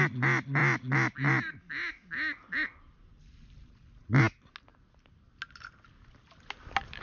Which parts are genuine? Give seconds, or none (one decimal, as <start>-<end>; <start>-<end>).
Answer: 0.0-7.0